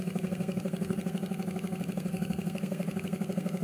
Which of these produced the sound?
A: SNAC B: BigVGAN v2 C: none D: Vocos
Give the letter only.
A